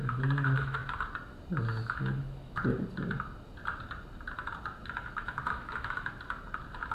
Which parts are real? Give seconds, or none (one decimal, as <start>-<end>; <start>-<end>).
0.8-1.8; 2.6-5.0; 6.1-6.9